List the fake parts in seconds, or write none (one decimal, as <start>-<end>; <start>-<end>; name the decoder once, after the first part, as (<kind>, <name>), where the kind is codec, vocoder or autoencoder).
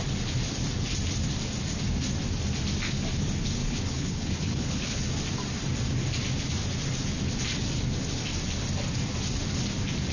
3.6-5.1 (codec, HILCodec)